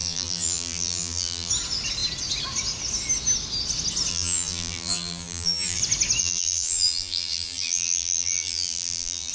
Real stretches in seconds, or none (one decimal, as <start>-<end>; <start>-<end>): 1.5-4.1; 5.8-6.2